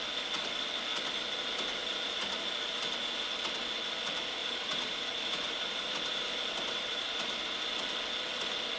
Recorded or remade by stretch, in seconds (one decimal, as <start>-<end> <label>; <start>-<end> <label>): 0.0-1.8 recorded; 1.8-2.5 remade; 2.5-4.4 recorded; 4.4-7.7 remade; 7.7-8.8 recorded